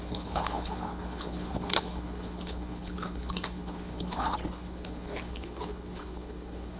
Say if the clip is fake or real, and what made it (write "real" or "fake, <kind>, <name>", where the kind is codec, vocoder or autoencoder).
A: fake, codec, HILCodec